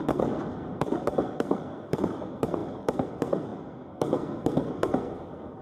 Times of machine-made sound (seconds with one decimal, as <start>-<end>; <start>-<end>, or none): 0.0-5.6